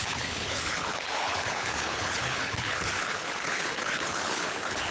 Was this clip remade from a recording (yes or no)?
yes